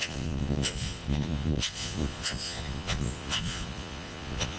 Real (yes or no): no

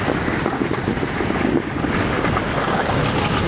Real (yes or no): yes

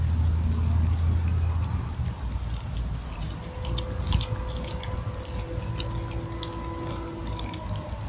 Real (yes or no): yes